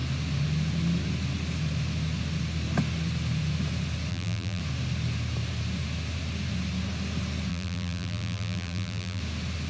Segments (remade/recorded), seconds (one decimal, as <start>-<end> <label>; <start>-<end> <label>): 0.0-4.1 recorded; 4.1-4.6 remade; 4.6-7.5 recorded; 7.5-9.2 remade; 9.2-9.7 recorded